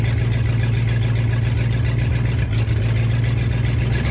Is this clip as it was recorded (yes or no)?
yes